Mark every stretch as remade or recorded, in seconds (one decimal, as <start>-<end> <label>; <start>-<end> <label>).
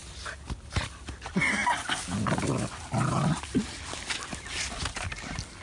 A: 0.0-5.6 recorded